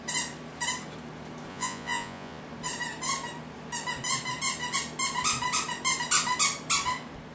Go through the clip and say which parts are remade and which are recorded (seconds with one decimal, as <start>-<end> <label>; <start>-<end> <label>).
0.0-1.5 recorded; 1.5-2.4 remade; 2.4-7.3 recorded